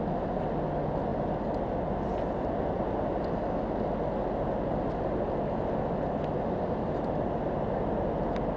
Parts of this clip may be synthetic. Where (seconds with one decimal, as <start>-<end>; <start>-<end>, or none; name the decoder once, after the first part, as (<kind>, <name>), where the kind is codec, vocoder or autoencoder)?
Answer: none